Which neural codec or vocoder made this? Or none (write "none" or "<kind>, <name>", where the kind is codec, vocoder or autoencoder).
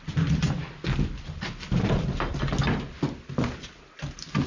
none